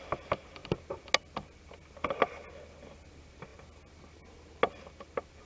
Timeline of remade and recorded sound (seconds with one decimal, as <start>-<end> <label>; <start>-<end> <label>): 0.0-5.5 recorded